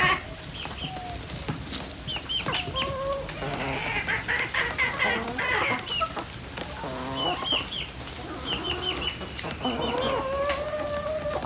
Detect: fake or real real